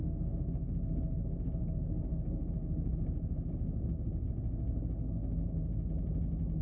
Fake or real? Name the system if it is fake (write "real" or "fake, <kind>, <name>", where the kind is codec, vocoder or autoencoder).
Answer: real